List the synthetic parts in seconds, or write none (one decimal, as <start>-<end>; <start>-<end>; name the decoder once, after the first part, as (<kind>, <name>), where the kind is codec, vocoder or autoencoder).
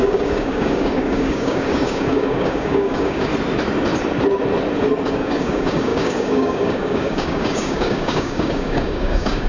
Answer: 0.0-3.3 (codec, DAC); 5.1-9.5